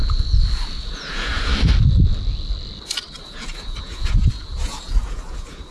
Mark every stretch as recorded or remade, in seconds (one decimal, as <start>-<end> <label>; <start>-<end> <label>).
0.0-1.5 remade; 1.5-3.2 recorded; 3.2-5.7 remade